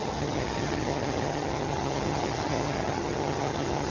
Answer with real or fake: fake